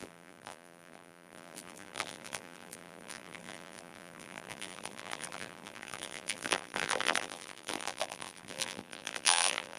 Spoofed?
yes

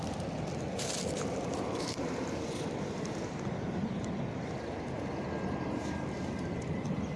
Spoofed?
yes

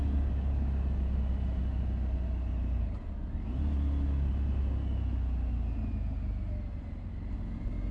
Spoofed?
no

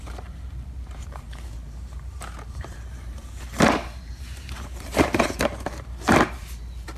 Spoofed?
yes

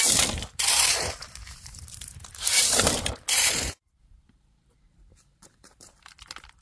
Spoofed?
yes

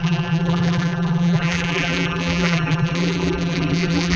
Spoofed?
yes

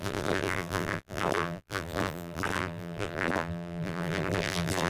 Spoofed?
yes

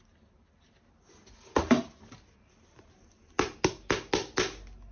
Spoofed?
no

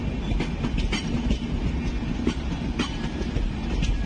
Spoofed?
no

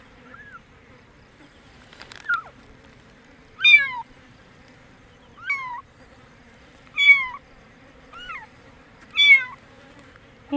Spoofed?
yes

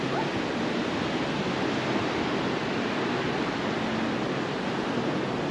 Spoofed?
no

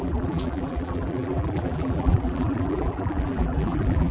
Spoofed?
yes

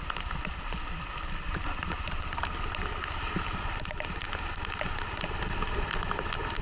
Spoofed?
no